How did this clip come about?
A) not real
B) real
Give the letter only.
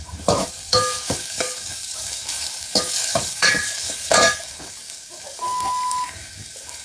A